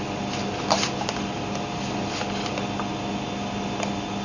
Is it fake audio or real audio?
real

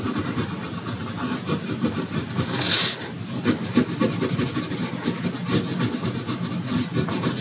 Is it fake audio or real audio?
real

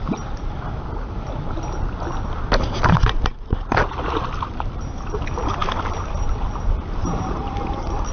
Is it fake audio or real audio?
real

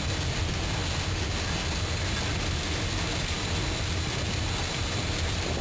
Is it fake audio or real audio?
real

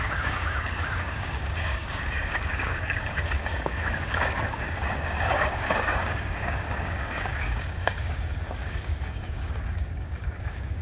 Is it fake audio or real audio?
fake